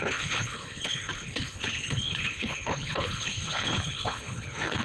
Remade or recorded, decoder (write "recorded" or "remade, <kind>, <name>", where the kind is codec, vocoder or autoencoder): remade, codec, HILCodec